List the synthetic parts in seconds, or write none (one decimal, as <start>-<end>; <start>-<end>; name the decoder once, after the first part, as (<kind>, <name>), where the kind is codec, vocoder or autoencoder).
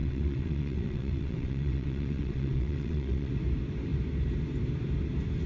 0.0-3.3 (vocoder, WaveNeXt)